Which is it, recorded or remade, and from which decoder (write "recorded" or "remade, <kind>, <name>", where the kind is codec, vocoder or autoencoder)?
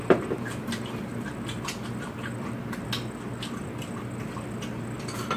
recorded